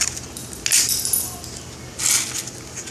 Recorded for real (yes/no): yes